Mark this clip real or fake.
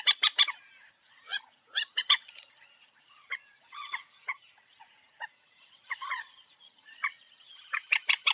fake